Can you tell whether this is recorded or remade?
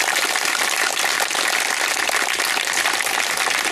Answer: recorded